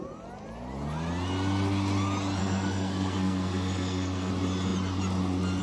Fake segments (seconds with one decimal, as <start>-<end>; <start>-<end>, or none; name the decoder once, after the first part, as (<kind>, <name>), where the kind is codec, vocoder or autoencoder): 2.4-4.3 (codec, SNAC)